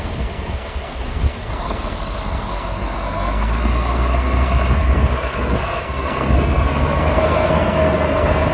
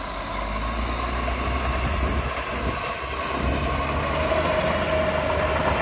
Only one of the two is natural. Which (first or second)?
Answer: second